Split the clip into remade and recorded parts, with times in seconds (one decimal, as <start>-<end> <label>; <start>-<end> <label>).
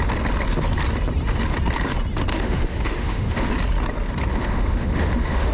0.0-2.3 recorded; 2.3-3.5 remade; 3.5-4.3 recorded; 4.3-5.5 remade